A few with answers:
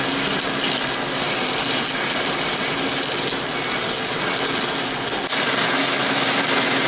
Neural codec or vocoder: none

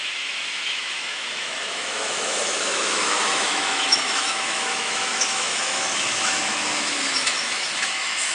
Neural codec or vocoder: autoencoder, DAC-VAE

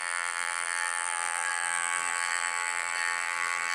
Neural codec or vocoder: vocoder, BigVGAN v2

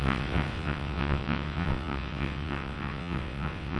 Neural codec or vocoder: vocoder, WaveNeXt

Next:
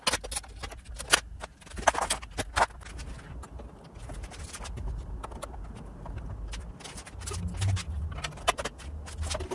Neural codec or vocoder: none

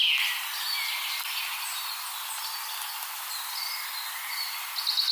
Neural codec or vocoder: none